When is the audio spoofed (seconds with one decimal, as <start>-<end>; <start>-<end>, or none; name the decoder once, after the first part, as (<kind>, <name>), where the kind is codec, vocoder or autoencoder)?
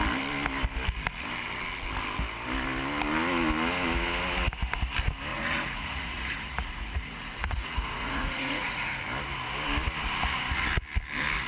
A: 5.3-9.0 (vocoder, Vocos)